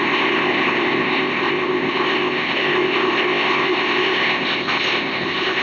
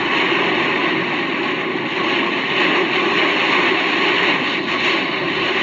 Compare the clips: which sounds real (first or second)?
second